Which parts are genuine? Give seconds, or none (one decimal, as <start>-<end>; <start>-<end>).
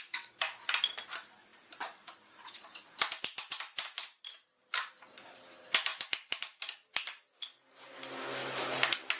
0.0-1.5; 5.0-5.9; 7.9-8.4